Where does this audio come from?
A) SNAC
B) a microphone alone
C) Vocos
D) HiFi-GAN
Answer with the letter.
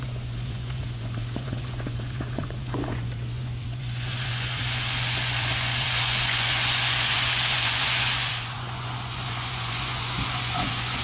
C